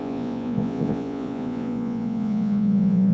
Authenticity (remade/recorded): remade